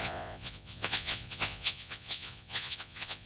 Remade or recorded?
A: remade